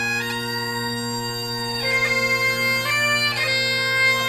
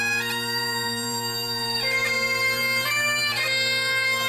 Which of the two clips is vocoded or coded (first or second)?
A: second